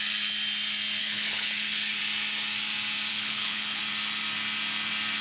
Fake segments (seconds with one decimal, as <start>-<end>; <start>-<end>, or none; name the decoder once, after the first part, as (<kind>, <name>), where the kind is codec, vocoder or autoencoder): 1.0-2.0 (codec, HILCodec); 3.1-3.8